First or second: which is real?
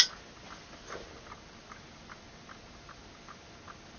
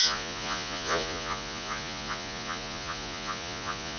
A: first